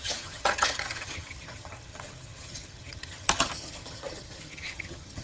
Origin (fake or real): fake